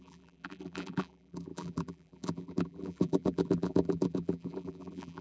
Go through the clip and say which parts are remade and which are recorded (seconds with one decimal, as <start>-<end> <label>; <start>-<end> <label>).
0.0-5.2 remade